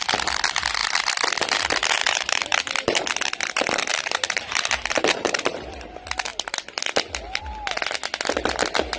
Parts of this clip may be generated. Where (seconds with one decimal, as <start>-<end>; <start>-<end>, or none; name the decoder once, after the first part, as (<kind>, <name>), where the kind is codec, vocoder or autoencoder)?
2.0-2.6 (vocoder, BigVGAN v2); 3.9-5.5